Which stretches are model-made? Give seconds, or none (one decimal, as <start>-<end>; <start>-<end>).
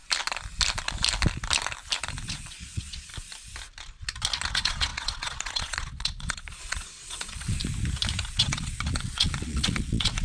2.1-3.1; 4.5-7.6; 8.3-10.2